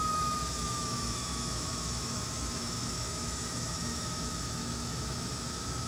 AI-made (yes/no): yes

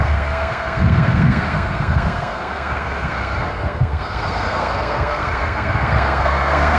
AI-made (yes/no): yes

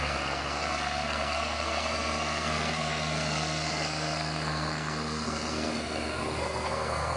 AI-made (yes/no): yes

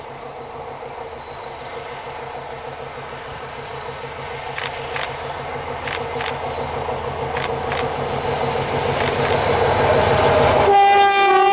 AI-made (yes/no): no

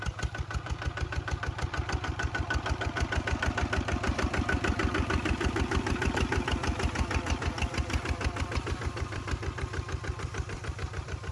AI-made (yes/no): yes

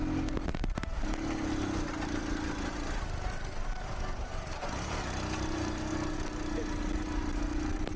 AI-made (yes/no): no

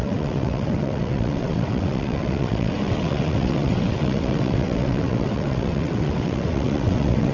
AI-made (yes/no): yes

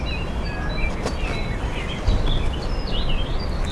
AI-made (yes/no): no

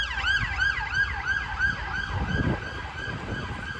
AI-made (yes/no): no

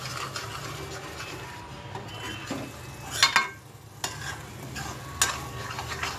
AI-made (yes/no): no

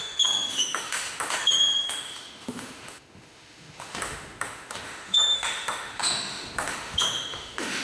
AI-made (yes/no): yes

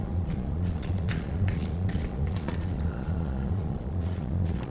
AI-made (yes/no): yes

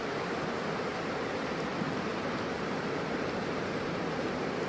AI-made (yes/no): no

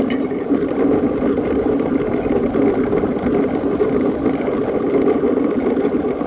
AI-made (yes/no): no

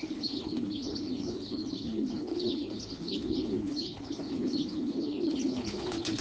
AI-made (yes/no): yes